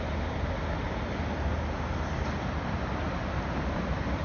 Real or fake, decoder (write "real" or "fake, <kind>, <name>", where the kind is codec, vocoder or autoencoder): real